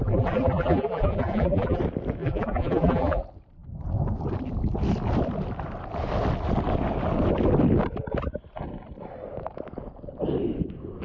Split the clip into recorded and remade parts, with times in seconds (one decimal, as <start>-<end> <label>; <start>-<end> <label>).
0.0-1.8 remade; 1.8-2.2 recorded; 2.2-3.2 remade; 3.2-11.0 recorded